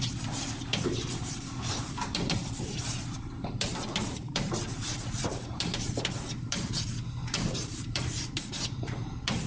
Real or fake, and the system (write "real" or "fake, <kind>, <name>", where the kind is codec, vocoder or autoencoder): fake, vocoder, BigVGAN v2